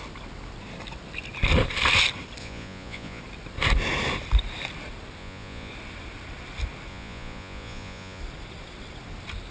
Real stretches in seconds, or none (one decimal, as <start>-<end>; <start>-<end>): 0.0-2.4; 3.2-5.2; 5.7-6.9; 8.2-9.5

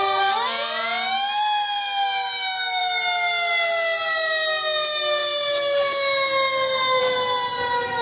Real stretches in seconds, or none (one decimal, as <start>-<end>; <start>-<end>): 0.0-8.0

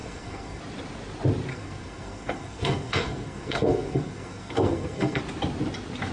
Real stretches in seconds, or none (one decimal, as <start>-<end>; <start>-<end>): 0.6-1.5; 5.2-6.1

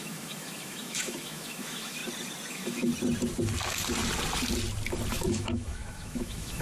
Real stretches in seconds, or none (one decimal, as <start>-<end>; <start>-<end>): 2.0-2.5; 2.9-5.1

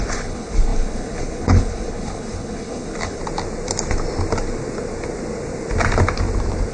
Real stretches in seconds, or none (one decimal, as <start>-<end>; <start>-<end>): 3.2-6.7

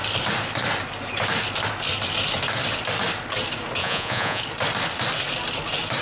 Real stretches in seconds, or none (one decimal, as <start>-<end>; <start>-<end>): 0.0-3.8; 4.4-6.0

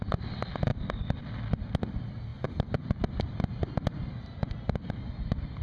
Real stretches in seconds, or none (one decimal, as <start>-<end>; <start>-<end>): 0.0-5.6